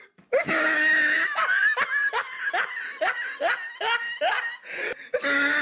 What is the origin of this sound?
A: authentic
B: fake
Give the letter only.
A